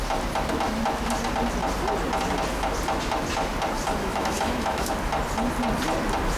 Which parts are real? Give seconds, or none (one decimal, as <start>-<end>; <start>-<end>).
0.0-4.0; 4.9-6.4